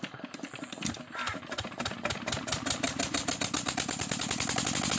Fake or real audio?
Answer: real